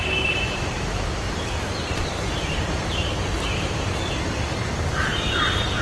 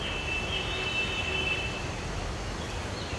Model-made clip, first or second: first